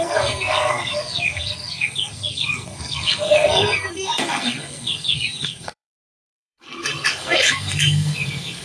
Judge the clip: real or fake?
fake